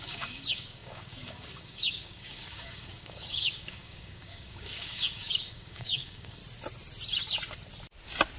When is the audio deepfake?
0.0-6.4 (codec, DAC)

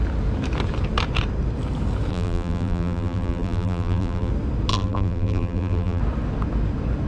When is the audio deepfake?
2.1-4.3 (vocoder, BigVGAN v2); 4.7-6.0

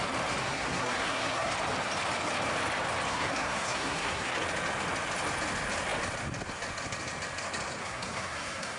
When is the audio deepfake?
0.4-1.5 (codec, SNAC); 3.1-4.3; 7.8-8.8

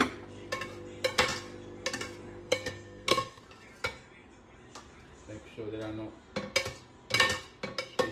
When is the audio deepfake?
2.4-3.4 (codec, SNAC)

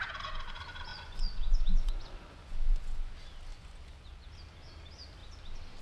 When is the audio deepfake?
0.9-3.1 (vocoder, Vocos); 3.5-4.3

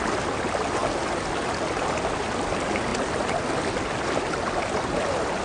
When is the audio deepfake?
none

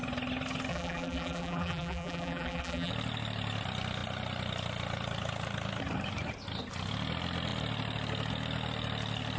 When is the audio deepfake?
0.7-2.9 (vocoder, BigVGAN v2)